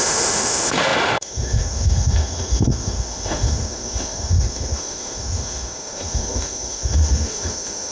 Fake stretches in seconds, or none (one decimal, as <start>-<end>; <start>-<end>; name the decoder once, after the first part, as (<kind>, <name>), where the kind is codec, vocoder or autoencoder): 0.0-7.9 (autoencoder, DAC-VAE)